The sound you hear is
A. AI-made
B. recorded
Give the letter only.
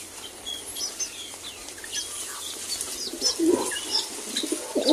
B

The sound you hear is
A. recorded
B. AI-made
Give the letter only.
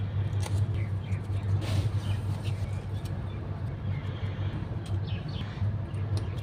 A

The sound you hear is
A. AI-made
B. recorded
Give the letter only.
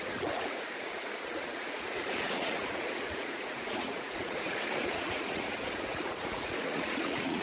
A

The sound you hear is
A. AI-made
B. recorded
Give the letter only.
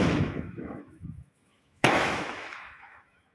A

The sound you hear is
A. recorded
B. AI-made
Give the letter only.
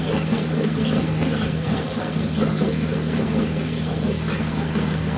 B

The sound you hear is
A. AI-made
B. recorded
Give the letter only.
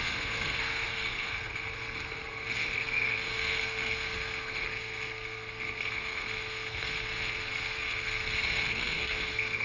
A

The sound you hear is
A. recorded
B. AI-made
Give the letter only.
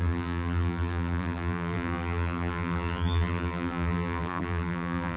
B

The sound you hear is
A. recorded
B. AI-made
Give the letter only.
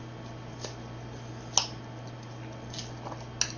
A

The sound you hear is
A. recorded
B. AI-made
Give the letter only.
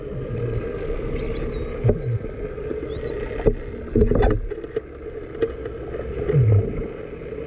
A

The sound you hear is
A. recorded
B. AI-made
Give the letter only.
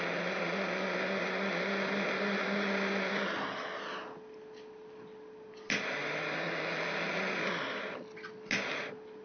A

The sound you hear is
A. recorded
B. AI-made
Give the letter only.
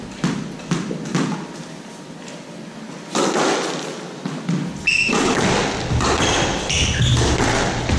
A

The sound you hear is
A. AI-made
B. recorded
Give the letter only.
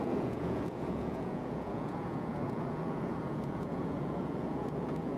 A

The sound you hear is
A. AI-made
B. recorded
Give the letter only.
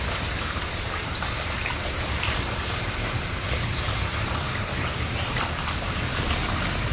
A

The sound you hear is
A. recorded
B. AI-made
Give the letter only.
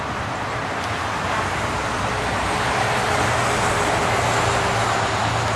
A